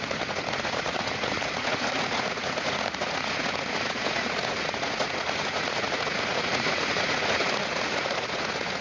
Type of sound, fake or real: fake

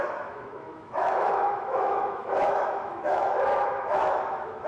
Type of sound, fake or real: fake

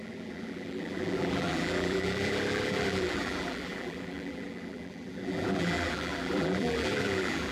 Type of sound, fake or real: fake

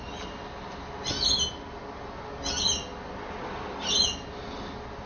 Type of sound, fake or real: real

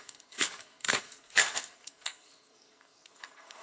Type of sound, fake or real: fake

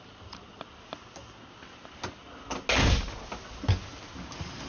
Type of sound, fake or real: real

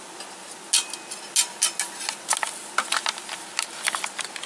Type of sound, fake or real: real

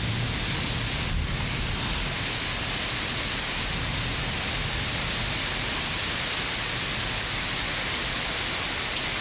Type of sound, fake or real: real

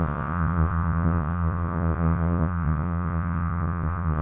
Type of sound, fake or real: fake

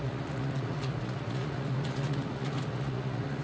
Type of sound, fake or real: fake